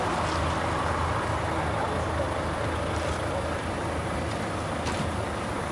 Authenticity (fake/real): real